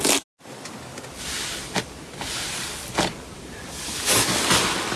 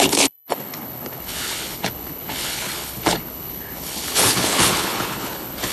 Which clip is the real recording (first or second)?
first